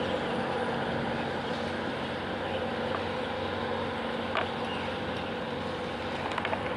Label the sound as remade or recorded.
recorded